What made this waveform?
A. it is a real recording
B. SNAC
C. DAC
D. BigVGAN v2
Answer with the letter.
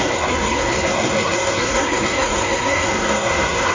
B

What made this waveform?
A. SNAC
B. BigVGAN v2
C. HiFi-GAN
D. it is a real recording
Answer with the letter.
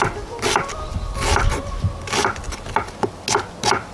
D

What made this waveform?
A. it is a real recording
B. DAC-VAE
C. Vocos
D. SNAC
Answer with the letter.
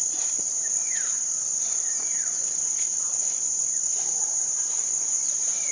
C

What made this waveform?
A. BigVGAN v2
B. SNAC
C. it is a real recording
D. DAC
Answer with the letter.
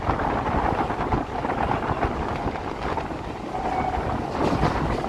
C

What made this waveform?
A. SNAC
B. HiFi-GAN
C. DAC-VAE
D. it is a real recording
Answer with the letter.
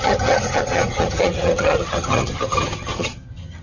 B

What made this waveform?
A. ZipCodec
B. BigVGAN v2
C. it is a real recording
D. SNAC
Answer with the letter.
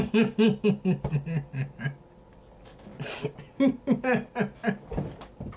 C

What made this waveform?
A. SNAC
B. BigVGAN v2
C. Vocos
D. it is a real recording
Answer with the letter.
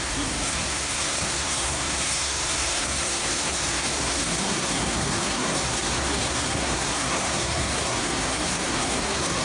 A